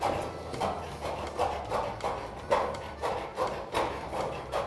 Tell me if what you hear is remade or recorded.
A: recorded